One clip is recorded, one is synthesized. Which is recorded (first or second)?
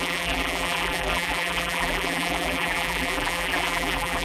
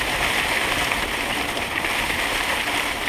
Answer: second